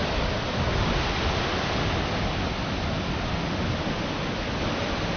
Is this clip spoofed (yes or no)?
no